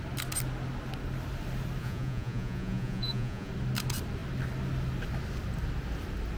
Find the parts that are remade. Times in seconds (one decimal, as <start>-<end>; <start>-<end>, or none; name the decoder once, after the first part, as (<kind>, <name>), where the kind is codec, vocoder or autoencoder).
1.8-3.5 (vocoder, Vocos)